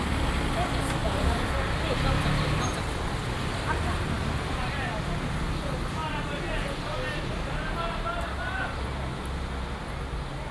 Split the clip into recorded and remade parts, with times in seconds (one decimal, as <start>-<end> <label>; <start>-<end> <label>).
0.0-1.0 recorded; 1.0-5.0 remade; 5.0-10.5 recorded